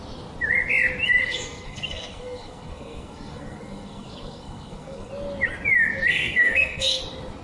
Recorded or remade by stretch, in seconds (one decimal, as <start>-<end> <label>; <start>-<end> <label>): 0.0-1.2 recorded; 1.2-5.1 remade; 5.1-6.1 recorded; 6.1-7.0 remade; 7.0-7.4 recorded